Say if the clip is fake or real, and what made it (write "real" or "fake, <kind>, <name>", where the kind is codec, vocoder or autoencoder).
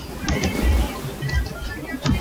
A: real